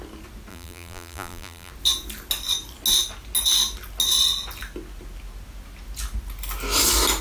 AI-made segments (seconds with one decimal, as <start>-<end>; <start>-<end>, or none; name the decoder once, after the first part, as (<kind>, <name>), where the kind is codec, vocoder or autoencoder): 0.5-1.7 (vocoder, BigVGAN v2)